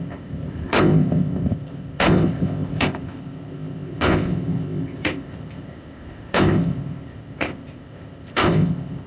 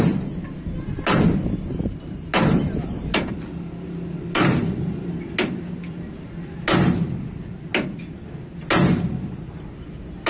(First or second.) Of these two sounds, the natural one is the second